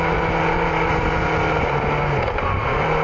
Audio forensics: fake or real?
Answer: real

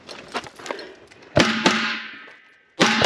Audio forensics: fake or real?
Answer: real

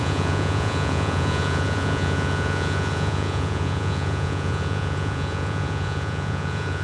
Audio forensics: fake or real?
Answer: fake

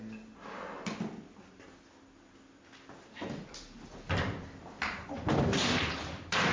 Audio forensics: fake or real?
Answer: real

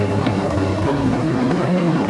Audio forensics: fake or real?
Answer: fake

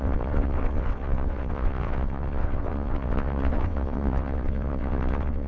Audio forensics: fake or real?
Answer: fake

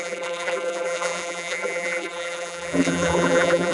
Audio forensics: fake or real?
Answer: fake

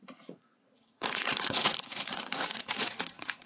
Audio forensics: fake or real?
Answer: fake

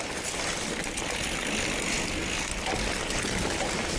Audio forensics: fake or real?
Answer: real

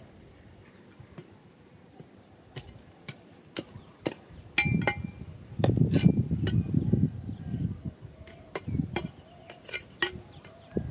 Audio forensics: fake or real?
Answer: real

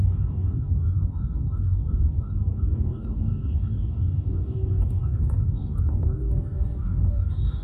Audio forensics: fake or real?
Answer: fake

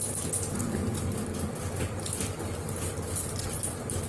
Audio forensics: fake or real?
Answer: real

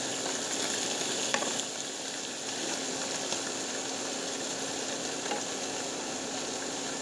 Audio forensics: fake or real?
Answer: real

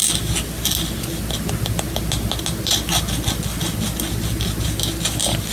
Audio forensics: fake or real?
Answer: real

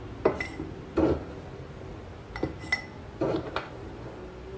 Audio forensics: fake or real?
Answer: real